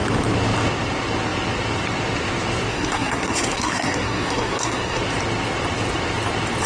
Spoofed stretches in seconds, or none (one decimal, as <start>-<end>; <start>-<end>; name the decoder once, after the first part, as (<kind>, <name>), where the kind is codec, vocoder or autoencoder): 2.7-5.0 (codec, SNAC)